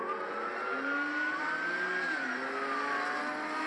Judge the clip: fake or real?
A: real